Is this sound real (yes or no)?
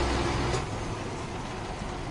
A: yes